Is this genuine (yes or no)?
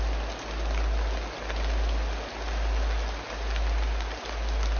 yes